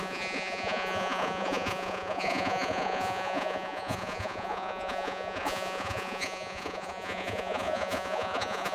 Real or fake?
fake